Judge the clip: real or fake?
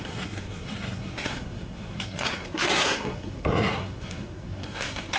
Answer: fake